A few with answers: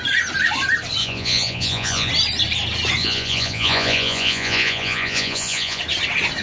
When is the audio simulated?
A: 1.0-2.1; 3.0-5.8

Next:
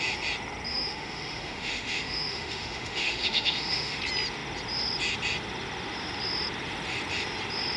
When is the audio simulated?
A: 0.7-4.0